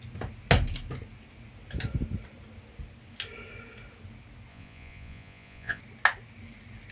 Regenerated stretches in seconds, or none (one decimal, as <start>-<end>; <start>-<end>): 4.5-5.8